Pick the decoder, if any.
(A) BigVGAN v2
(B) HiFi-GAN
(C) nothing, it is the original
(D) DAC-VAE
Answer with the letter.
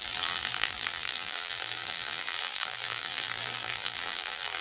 A